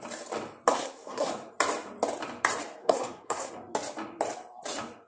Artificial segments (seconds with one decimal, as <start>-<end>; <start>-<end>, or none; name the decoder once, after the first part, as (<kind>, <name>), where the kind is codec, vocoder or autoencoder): 0.7-1.3 (codec, SNAC); 2.8-3.5